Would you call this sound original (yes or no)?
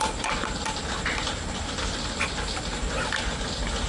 yes